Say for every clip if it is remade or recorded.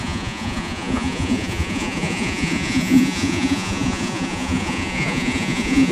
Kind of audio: remade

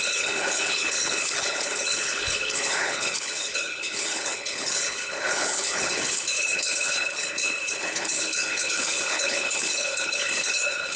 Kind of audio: remade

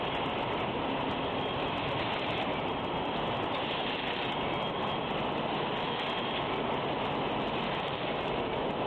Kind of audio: recorded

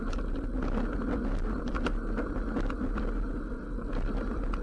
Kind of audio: recorded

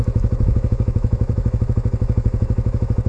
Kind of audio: remade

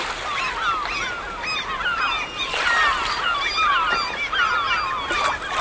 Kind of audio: recorded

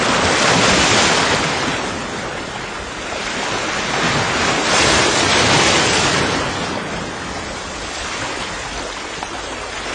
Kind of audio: recorded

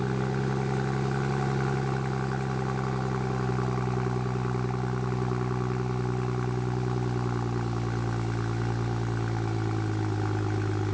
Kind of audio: recorded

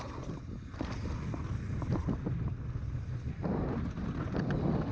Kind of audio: recorded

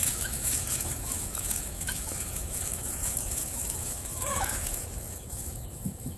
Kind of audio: remade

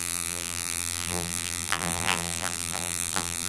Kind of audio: remade